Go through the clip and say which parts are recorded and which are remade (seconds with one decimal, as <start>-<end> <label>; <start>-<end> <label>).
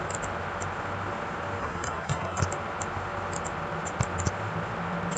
0.0-1.6 recorded; 1.6-2.4 remade; 2.4-5.2 recorded